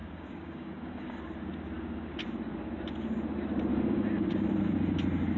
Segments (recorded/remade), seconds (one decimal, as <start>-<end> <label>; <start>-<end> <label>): 0.0-1.2 remade; 1.2-3.7 recorded; 3.7-4.5 remade; 4.5-5.4 recorded